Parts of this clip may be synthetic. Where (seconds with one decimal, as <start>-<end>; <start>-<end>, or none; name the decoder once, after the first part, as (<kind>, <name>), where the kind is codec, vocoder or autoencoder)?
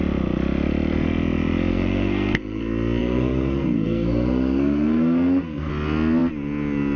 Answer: 1.7-2.6 (codec, SNAC); 3.0-5.7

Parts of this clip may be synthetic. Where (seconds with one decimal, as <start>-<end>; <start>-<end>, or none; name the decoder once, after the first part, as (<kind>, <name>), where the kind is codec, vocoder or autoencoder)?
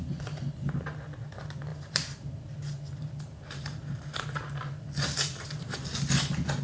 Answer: 1.7-5.7 (vocoder, BigVGAN v2)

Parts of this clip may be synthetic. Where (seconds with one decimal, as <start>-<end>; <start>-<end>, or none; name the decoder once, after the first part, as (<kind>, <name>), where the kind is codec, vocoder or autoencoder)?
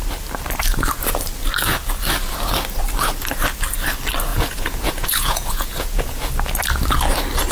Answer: 4.3-6.3 (vocoder, Vocos)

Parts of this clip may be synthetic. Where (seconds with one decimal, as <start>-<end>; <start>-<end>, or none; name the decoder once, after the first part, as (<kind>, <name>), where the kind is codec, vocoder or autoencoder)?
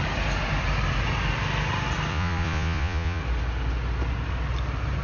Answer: 2.1-3.2 (vocoder, Vocos)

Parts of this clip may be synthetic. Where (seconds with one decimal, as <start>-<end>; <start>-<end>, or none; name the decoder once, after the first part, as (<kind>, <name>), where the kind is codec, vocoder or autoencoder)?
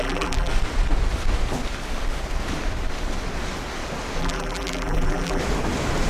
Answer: 0.0-0.5 (vocoder, BigVGAN v2); 4.2-5.4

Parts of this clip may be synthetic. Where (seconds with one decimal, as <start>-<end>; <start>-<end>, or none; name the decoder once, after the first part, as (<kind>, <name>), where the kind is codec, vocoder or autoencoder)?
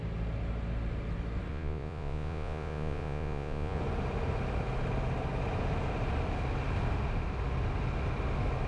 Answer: 1.5-3.8 (vocoder, Vocos)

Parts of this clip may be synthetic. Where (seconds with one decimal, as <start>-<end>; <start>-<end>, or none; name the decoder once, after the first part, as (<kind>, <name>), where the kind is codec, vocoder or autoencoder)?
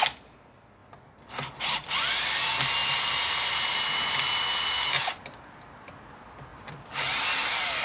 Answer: 0.8-1.4 (vocoder, BigVGAN v2); 2.8-5.2; 6.5-7.8